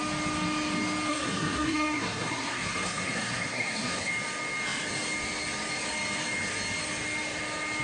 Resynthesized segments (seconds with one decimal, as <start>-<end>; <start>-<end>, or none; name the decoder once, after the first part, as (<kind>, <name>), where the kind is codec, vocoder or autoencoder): 1.1-4.1 (codec, SNAC)